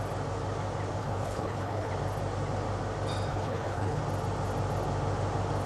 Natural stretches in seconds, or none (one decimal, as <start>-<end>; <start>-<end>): 0.0-1.0; 1.9-3.3; 4.0-5.7